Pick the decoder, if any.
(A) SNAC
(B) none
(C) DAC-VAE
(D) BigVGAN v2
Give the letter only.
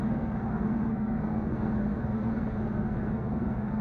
A